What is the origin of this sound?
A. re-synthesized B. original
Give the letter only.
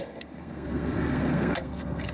A